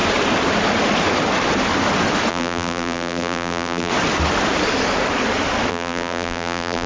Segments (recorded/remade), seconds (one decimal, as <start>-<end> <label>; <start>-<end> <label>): 0.0-2.3 recorded; 2.3-3.9 remade; 3.9-5.7 recorded; 5.7-6.9 remade

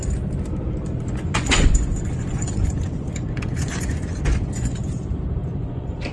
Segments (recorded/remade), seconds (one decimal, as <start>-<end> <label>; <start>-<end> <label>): 0.0-1.1 recorded; 1.1-4.8 remade; 4.8-5.4 recorded; 5.4-6.1 remade

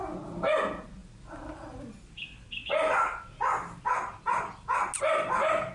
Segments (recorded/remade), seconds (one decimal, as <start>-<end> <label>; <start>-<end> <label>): 0.0-1.0 recorded; 1.0-1.8 remade; 1.8-5.7 recorded

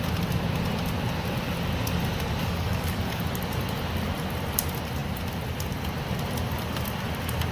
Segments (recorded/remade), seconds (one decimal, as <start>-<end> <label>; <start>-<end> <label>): 0.0-2.4 recorded; 2.4-3.2 remade; 3.2-7.5 recorded

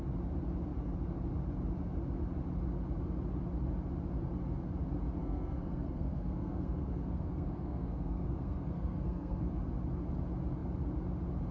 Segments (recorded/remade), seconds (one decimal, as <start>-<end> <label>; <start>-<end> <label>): 0.0-5.2 recorded; 5.2-9.6 remade; 9.6-11.5 recorded